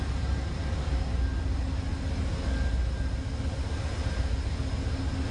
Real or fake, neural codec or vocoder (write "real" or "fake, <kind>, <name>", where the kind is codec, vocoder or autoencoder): real